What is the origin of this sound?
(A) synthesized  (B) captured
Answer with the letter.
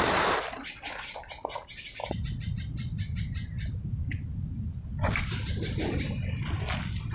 B